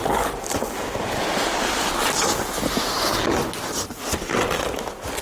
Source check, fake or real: real